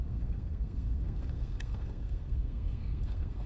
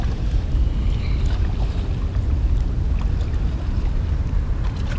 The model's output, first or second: first